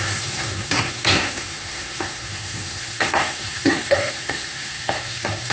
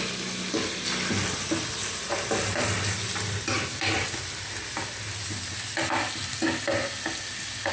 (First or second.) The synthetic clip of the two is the first